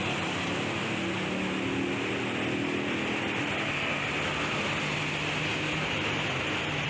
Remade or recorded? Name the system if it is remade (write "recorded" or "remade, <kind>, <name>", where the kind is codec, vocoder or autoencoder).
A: recorded